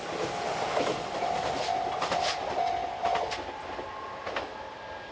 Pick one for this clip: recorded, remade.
recorded